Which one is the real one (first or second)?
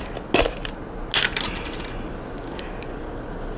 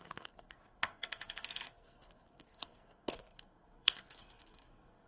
first